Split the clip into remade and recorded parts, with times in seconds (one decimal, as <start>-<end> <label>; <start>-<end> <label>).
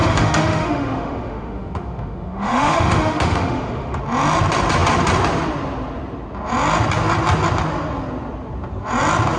0.0-4.0 remade; 4.0-9.4 recorded